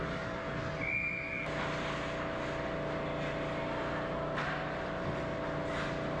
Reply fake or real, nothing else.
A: real